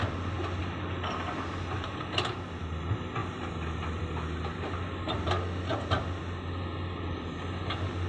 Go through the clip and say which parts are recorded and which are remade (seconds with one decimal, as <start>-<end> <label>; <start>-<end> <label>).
0.0-8.1 recorded